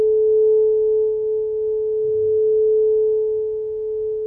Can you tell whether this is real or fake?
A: real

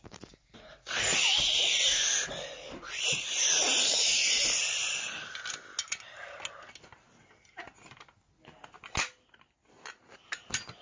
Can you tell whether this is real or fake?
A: real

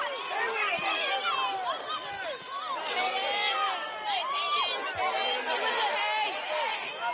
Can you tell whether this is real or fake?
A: real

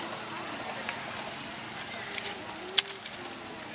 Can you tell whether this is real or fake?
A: real